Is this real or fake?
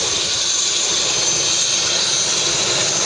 real